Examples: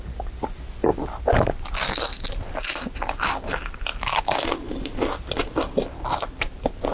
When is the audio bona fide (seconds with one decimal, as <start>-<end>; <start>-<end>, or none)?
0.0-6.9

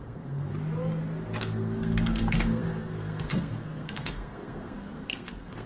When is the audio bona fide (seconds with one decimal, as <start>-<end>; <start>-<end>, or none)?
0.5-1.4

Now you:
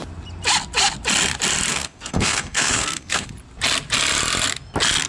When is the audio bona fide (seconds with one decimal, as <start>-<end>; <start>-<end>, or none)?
0.0-1.7; 3.3-5.1

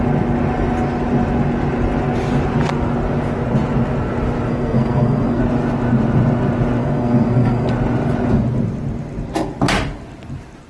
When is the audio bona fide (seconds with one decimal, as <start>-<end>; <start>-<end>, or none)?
0.0-4.5; 5.4-6.8; 7.7-10.7

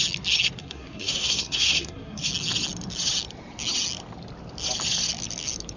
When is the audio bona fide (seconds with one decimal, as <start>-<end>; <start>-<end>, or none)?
0.0-0.6; 2.3-5.8